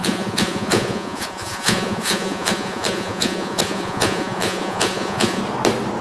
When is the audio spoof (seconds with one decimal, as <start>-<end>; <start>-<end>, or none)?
0.0-5.4